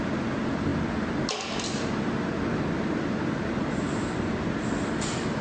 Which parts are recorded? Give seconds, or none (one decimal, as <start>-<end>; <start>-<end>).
0.7-1.9